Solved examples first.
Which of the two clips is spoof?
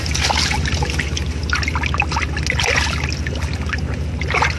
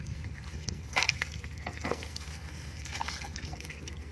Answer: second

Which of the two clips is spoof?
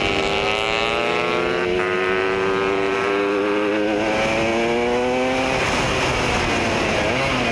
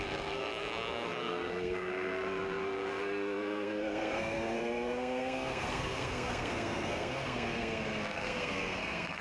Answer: second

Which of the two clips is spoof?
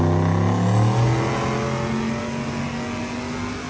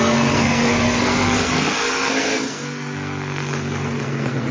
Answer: second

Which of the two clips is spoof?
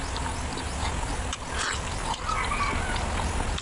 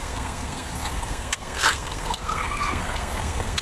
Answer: second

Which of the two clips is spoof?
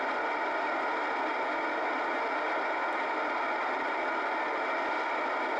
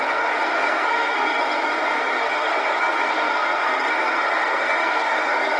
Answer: second